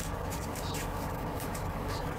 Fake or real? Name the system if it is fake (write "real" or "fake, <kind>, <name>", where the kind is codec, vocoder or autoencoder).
fake, codec, DAC